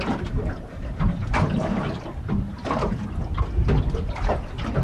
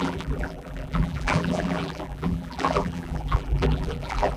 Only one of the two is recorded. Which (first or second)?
first